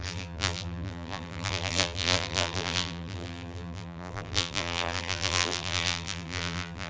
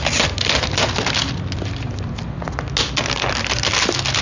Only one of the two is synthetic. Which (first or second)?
first